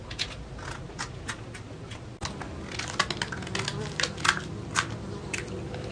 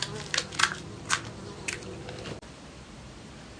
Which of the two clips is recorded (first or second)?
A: first